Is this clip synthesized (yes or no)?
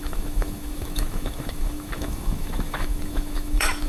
yes